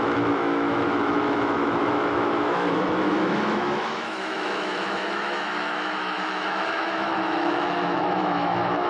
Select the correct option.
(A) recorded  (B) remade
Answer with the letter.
B